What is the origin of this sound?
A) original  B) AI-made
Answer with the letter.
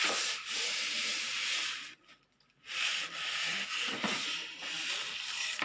A